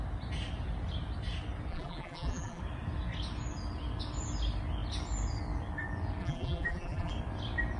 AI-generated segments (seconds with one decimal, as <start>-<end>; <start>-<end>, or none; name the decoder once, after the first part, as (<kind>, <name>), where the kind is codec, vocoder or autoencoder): 1.7-2.6 (vocoder, BigVGAN v2); 6.2-7.1